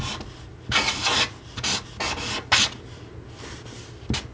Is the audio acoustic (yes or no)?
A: yes